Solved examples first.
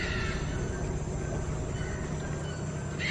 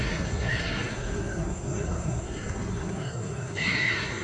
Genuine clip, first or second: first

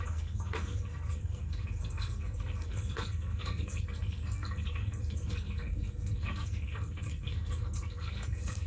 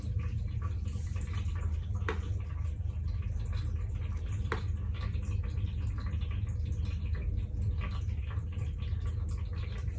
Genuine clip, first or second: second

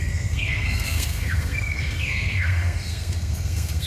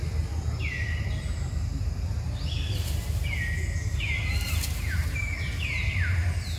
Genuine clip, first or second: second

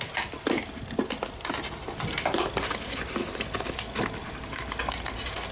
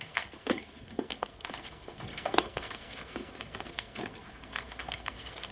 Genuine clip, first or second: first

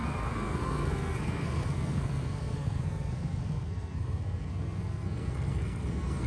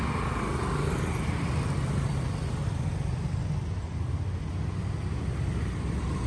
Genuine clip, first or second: second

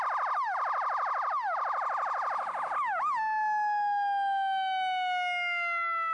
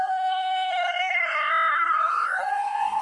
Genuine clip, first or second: first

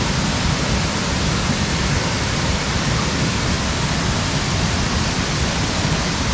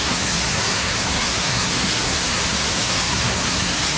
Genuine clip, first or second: first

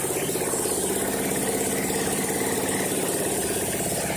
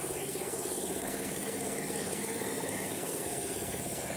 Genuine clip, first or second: first